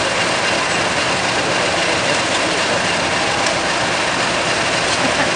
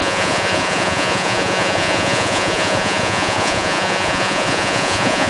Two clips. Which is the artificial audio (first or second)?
second